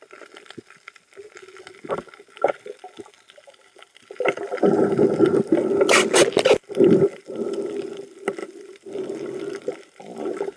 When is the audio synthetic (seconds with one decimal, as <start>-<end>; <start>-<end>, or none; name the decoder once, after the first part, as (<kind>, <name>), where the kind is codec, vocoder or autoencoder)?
none